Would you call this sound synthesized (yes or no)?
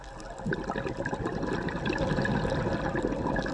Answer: no